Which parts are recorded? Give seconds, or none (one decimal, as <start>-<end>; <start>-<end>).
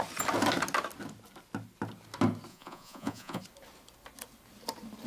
0.0-2.5; 3.4-5.1